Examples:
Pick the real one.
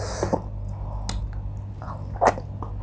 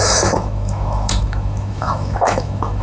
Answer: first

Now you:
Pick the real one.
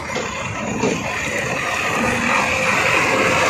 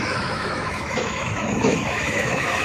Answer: first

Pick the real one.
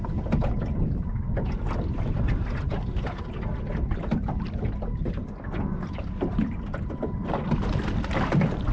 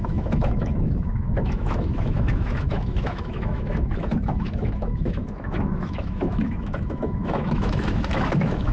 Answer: first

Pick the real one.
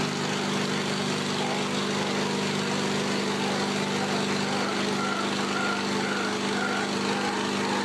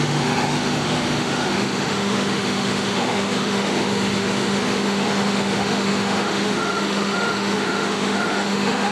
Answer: first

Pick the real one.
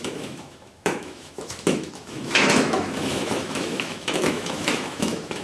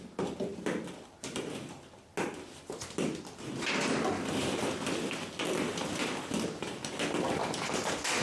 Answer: second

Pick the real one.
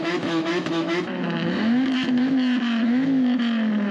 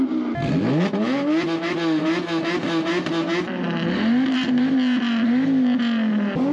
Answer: second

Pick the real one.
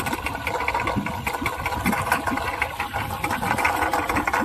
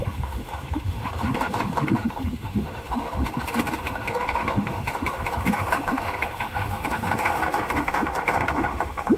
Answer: first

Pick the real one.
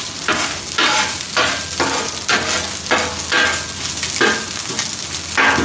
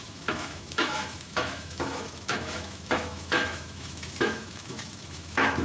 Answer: first